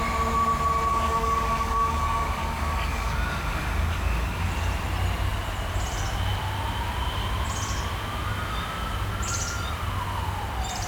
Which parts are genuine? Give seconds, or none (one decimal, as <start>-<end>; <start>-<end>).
0.0-0.9; 4.5-10.9